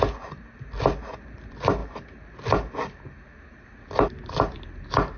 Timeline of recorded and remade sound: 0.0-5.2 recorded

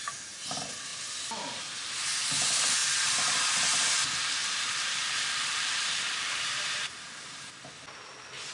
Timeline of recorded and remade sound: 0.0-4.4 recorded; 4.4-7.5 remade; 7.5-8.5 recorded

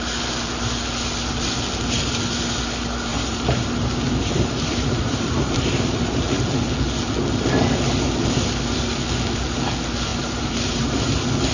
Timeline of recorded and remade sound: 0.0-3.1 recorded; 3.1-6.3 remade; 6.3-10.1 recorded; 10.1-11.0 remade; 11.0-11.5 recorded

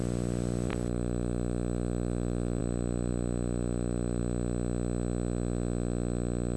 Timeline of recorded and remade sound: 0.0-0.7 recorded; 0.7-2.6 remade; 2.6-6.6 recorded